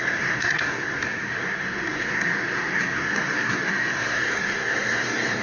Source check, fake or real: fake